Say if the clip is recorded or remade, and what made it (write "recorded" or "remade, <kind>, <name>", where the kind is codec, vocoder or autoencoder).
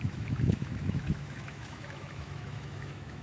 remade, autoencoder, DAC-VAE